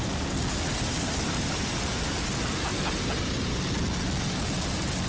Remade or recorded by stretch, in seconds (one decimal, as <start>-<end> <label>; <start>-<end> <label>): 0.0-5.1 recorded